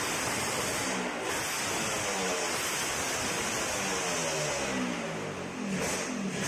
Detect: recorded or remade recorded